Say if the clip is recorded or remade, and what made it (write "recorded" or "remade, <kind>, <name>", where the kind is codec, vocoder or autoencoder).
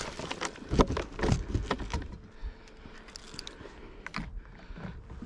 recorded